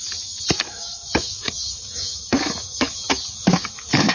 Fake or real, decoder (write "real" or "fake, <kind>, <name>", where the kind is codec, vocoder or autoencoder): fake, autoencoder, DAC-VAE